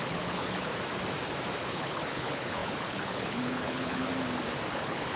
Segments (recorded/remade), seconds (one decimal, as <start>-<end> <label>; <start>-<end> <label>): 0.0-0.7 remade; 0.7-1.7 recorded; 1.7-4.1 remade; 4.1-4.7 recorded; 4.7-5.2 remade